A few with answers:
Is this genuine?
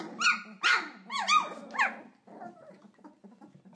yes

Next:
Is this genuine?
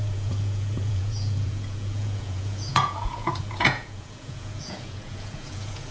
no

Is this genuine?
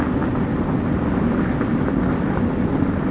yes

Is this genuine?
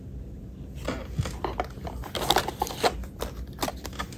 yes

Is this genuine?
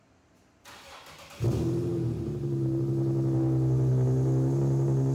yes